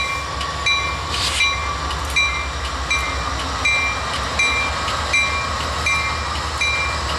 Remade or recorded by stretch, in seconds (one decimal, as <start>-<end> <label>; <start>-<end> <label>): 0.0-7.2 recorded